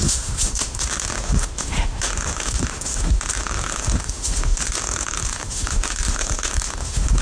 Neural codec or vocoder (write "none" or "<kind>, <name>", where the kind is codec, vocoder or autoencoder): autoencoder, DAC-VAE